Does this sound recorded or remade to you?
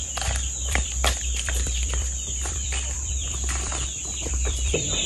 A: remade